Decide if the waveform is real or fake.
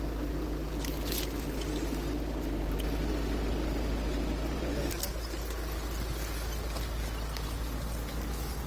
real